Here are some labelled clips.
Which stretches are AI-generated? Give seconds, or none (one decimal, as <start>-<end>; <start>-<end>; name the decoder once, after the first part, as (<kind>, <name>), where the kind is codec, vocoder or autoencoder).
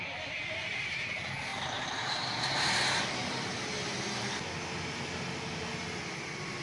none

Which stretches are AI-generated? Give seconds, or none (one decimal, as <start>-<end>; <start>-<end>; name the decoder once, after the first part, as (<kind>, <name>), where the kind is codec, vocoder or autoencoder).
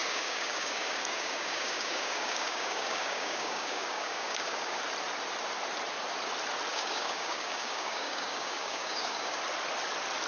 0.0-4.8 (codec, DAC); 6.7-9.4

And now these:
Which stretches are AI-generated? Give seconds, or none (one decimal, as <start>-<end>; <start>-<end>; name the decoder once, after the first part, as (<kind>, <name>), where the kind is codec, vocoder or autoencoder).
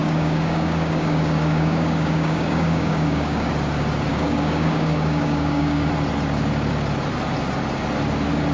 0.0-3.5 (codec, DAC); 4.1-5.9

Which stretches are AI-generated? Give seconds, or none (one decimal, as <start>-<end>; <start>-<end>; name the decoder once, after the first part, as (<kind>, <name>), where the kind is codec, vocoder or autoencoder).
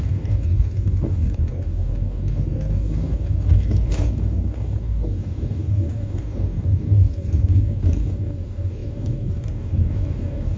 0.0-10.6 (codec, DAC)